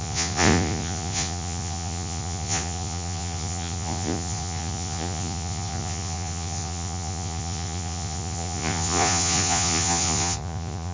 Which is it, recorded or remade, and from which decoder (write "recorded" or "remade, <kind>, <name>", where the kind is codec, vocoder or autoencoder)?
remade, vocoder, Vocos